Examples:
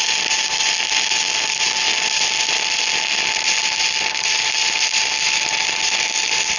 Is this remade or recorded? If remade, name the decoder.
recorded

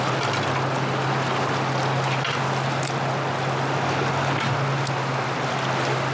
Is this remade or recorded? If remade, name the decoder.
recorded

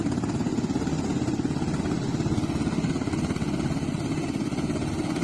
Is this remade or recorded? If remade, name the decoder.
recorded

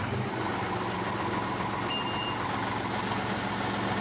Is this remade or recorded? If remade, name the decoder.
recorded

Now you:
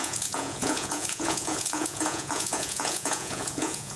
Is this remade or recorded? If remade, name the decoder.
remade, vocoder, Vocos